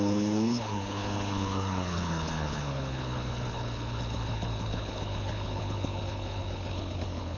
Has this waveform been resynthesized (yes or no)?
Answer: yes